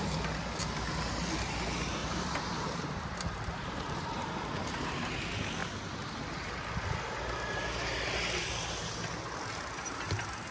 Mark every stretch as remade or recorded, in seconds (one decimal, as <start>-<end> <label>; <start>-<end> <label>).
0.0-2.0 recorded; 2.0-4.9 remade; 4.9-10.5 recorded